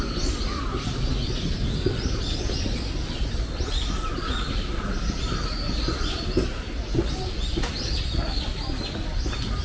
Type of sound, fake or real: real